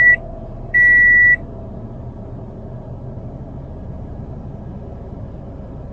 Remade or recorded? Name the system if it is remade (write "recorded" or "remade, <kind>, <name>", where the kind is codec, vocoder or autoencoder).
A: recorded